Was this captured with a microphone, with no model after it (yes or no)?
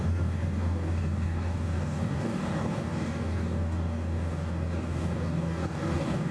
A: no